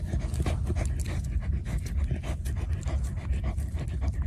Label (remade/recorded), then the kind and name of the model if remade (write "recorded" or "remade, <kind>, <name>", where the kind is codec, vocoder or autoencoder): recorded